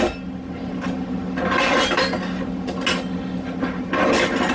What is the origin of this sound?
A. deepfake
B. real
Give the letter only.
B